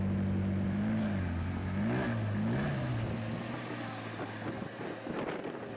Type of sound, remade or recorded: recorded